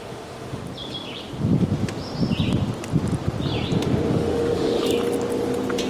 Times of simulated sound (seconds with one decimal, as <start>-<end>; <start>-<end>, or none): 0.0-0.6; 4.1-4.9